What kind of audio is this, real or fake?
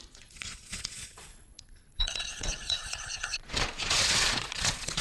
fake